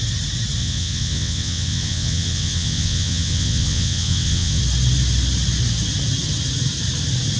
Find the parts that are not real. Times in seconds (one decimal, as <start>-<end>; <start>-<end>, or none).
0.6-4.6